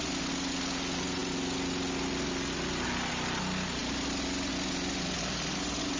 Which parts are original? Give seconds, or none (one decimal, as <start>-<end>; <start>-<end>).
0.0-6.0